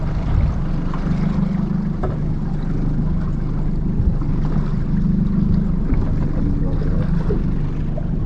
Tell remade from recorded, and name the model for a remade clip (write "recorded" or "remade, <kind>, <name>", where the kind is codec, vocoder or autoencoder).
recorded